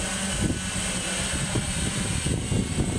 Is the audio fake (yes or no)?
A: no